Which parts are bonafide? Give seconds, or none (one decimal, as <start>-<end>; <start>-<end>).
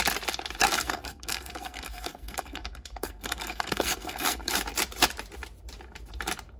0.0-0.6; 4.5-6.6